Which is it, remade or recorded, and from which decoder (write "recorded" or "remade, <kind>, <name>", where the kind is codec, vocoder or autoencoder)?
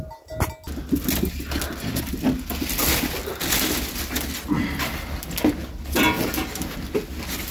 recorded